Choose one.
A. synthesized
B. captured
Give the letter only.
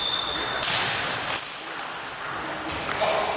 B